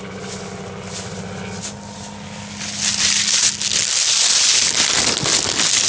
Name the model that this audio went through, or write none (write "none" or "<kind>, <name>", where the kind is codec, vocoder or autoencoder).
none